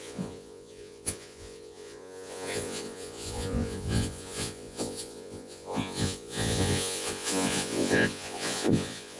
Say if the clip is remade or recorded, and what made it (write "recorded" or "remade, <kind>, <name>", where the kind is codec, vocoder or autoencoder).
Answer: remade, vocoder, Vocos